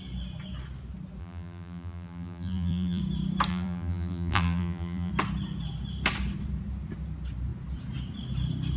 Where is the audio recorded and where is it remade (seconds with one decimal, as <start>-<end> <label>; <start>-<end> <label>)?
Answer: 0.0-1.2 recorded; 1.2-3.0 remade; 3.0-3.5 recorded; 3.5-5.1 remade; 5.1-8.8 recorded